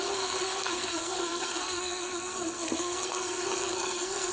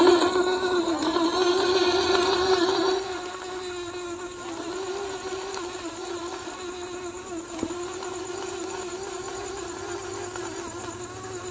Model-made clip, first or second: first